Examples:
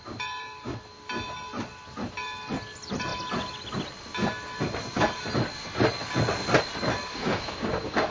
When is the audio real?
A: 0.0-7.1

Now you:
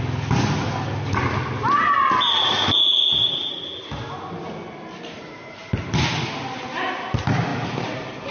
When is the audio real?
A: 0.0-8.3